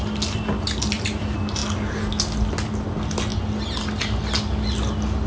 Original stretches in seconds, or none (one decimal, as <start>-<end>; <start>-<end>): 0.0-5.3